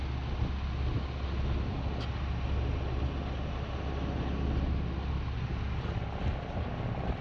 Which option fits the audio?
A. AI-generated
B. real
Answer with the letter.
B